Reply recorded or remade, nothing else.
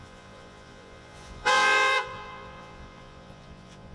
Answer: remade